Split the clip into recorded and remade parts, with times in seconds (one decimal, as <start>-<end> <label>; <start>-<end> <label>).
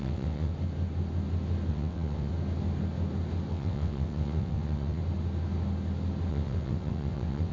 0.0-0.5 remade; 0.5-1.7 recorded; 1.7-2.3 remade; 2.3-3.5 recorded; 3.5-5.0 remade; 5.0-6.3 recorded; 6.3-7.5 remade